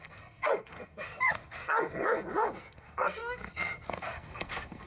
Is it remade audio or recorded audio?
remade